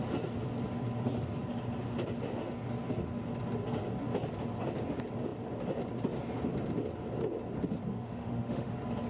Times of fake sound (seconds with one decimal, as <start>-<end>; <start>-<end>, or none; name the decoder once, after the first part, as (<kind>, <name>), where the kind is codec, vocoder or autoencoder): 7.9-8.7 (autoencoder, DAC-VAE)